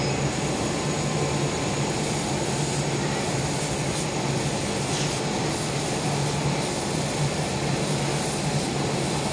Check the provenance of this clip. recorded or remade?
recorded